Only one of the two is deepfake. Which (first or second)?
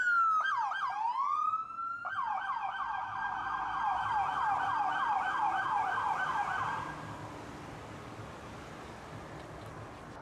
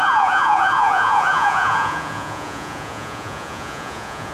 second